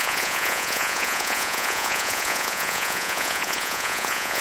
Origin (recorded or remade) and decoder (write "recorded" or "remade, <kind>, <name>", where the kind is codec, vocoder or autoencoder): remade, vocoder, Vocos